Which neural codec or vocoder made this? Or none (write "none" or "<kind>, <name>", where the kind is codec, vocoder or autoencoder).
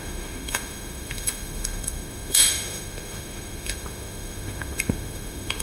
autoencoder, DAC-VAE